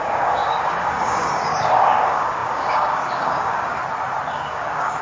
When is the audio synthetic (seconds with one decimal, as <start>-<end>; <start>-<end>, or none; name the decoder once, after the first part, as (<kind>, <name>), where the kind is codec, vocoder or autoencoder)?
0.0-3.8 (codec, DAC); 4.3-5.0